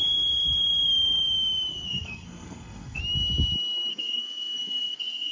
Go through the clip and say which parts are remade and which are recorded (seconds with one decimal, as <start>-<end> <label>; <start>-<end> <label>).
0.0-1.7 recorded; 1.7-3.0 remade; 3.0-3.9 recorded; 3.9-5.3 remade